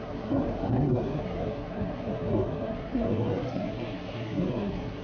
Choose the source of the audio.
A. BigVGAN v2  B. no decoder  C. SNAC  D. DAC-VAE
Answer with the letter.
C